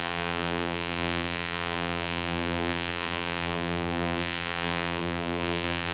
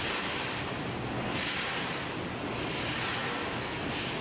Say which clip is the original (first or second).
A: second